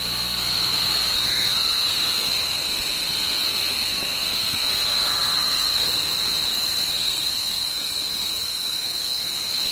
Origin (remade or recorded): remade